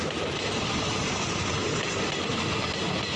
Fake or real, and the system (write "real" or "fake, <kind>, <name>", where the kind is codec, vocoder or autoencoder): real